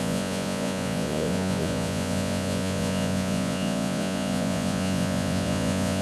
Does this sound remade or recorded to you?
remade